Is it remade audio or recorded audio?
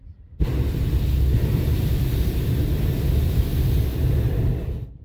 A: recorded